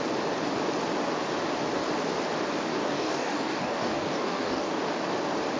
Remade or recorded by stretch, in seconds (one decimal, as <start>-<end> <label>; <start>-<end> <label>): 0.0-2.7 recorded; 2.7-4.8 remade; 4.8-5.6 recorded